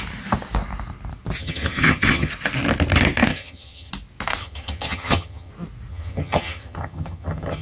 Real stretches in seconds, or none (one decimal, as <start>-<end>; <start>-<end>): 0.0-1.4; 2.3-3.3; 3.9-4.4; 5.5-5.9